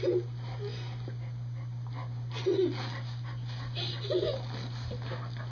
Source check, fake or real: real